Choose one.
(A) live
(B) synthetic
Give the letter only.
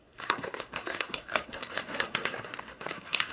B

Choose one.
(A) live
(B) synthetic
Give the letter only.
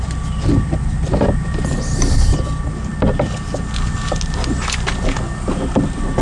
A